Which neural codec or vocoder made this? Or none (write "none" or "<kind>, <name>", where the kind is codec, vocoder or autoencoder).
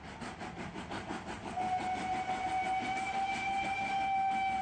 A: none